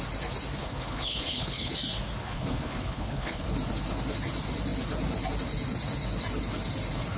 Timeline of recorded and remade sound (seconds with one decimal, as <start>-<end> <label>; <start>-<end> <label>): 0.0-0.6 recorded; 0.6-1.7 remade; 1.7-2.2 recorded; 2.2-3.4 remade; 3.4-7.2 recorded